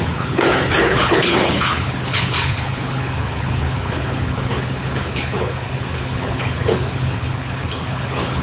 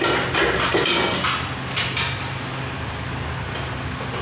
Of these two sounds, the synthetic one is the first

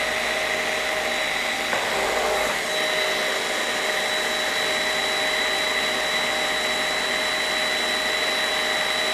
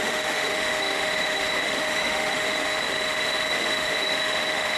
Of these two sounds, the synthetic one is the second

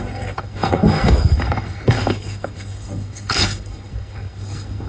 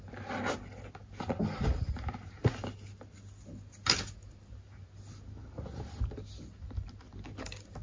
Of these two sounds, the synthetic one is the first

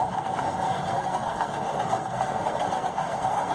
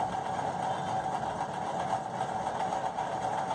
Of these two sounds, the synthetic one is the first